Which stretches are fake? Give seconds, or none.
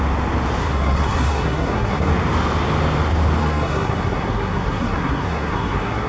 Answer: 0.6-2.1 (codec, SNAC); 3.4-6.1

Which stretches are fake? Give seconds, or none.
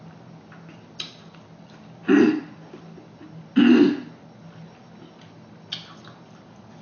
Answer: none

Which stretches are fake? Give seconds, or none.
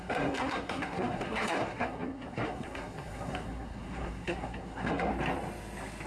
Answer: 0.0-5.1 (codec, SNAC)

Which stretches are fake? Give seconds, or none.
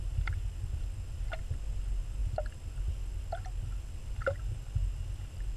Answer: none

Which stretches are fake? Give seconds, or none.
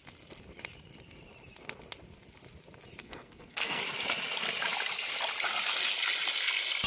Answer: 3.0-3.8 (codec, SNAC)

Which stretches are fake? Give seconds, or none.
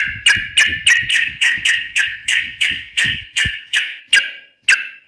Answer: 1.1-4.0 (codec, SNAC)